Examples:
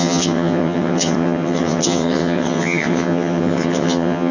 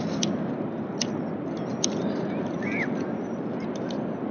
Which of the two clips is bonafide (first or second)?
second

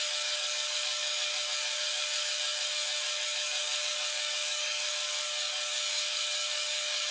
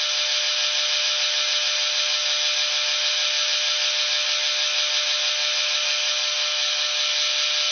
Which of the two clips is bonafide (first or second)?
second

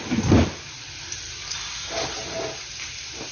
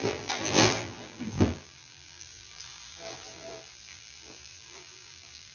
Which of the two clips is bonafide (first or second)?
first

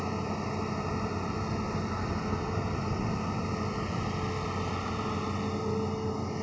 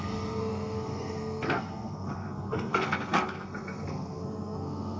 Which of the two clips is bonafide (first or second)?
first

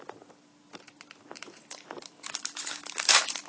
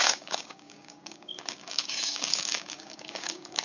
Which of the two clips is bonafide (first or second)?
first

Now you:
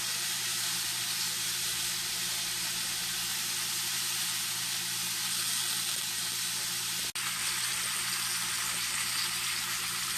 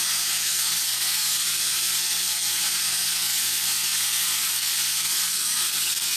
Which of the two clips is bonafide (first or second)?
first